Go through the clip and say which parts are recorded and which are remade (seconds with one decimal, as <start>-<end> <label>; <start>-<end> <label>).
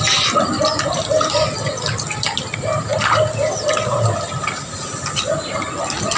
0.0-6.2 recorded